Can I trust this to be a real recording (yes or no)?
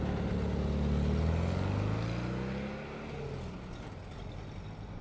yes